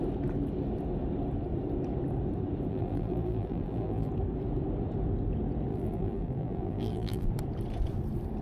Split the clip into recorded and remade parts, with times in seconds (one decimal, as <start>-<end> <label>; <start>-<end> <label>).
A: 0.0-2.7 recorded; 2.7-4.1 remade; 4.1-5.7 recorded; 5.7-7.3 remade; 7.3-8.4 recorded